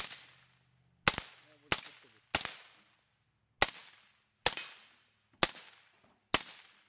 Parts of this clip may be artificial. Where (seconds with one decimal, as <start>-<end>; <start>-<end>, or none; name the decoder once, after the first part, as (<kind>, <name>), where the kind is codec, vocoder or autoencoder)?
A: none